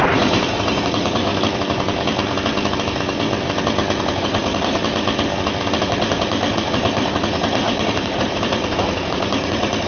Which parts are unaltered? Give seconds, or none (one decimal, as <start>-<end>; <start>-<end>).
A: 1.3-4.1; 4.8-5.8